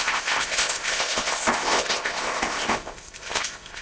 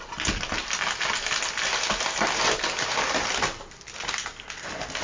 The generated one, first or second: first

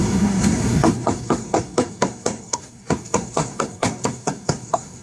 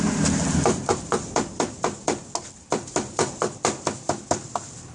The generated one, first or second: first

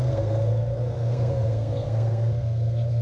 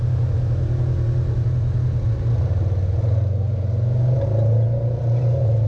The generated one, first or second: first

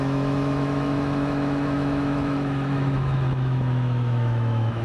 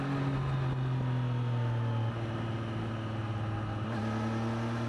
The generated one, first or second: first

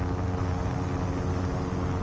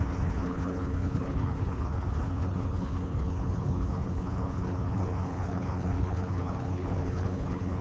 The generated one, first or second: second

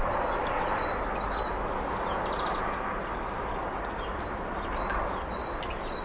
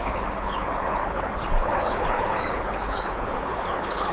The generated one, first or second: second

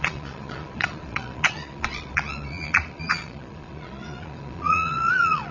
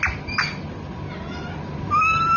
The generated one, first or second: first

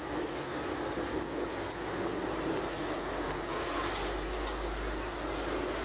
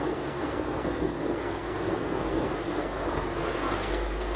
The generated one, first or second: second